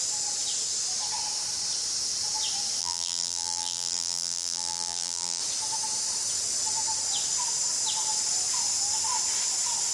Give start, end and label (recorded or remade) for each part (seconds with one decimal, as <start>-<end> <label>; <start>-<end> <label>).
0.0-2.8 recorded; 2.8-5.4 remade; 5.4-9.9 recorded